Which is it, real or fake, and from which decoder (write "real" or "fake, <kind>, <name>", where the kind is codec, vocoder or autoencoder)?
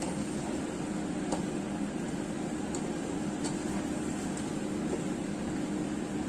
real